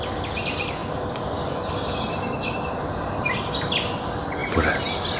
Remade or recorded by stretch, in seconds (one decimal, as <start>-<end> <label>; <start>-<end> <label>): 0.0-5.2 recorded